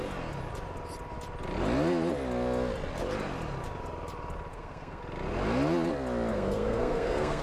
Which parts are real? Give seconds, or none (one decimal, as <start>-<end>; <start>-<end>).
0.0-4.5; 5.0-6.3